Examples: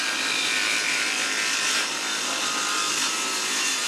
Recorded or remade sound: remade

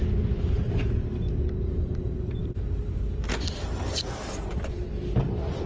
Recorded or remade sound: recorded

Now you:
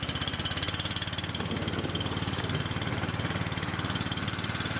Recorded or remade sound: recorded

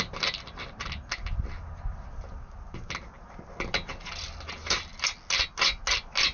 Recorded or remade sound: recorded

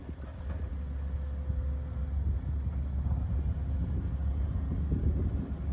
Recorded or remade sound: recorded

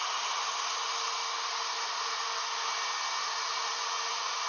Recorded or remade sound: recorded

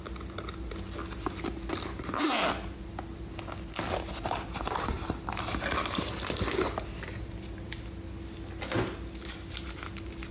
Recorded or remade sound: recorded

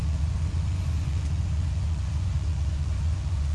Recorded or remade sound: remade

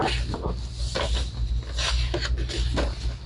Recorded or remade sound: recorded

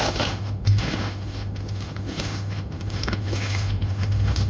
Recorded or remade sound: remade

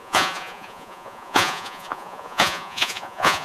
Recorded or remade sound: remade